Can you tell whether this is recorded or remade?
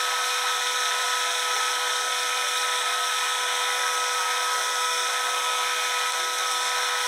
remade